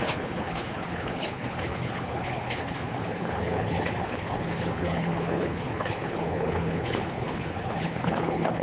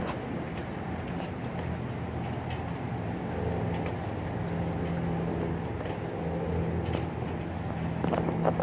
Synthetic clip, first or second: first